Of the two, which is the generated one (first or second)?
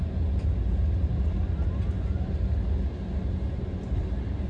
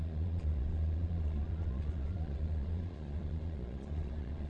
second